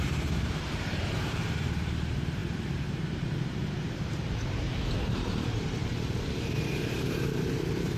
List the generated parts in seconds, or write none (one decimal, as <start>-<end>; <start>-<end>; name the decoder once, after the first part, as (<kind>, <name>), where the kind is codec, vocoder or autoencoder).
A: 0.0-8.0 (vocoder, BigVGAN v2)